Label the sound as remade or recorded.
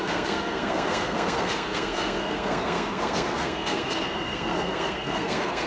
remade